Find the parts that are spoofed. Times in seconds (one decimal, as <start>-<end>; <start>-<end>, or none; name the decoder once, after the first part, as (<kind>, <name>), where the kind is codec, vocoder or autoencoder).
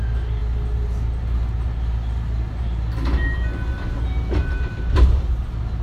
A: none